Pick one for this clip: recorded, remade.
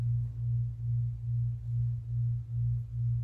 recorded